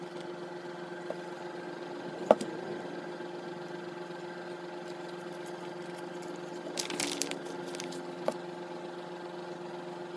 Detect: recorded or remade recorded